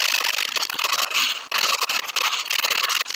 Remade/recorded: recorded